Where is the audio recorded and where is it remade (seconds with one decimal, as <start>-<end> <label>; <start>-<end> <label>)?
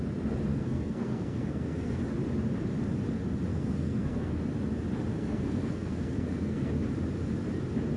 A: 0.0-0.5 recorded; 0.5-2.0 remade; 2.0-3.5 recorded; 3.5-4.4 remade; 4.4-5.1 recorded; 5.1-6.7 remade; 6.7-8.0 recorded